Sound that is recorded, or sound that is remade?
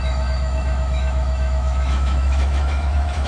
remade